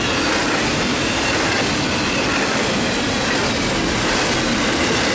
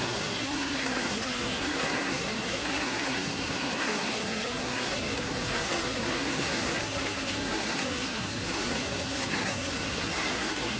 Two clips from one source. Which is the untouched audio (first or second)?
first